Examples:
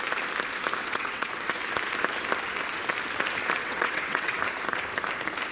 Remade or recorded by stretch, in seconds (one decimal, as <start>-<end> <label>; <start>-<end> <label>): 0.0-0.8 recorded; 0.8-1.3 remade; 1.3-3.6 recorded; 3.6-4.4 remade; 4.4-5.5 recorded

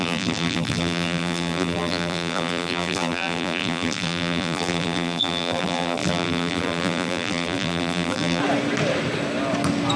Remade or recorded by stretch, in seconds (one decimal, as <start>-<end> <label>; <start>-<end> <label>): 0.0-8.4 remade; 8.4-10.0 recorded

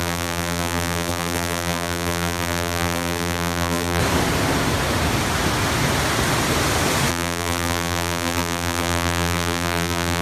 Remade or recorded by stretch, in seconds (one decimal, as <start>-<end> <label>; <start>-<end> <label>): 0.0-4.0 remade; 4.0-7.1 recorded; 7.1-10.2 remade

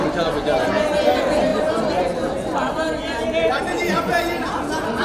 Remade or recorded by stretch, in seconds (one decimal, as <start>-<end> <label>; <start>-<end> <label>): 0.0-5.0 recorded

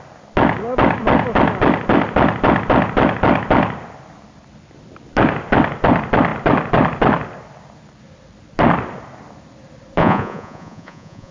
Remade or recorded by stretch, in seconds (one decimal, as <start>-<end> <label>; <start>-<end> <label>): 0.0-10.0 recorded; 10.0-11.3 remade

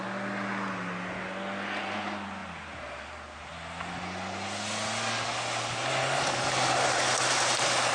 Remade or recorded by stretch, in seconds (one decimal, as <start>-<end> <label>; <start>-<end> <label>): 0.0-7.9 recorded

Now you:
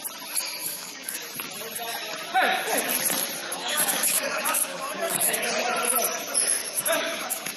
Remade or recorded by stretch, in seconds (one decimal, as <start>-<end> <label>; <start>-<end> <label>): 0.0-0.6 recorded; 0.6-1.2 remade; 1.2-3.4 recorded; 3.4-5.5 remade; 5.5-6.6 recorded; 6.6-7.6 remade